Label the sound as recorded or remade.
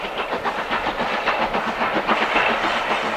recorded